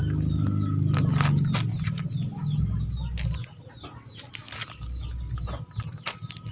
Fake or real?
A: real